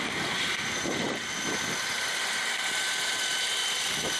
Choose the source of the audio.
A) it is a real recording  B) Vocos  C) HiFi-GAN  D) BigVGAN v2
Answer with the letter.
D